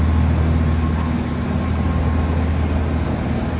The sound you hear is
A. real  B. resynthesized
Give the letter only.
A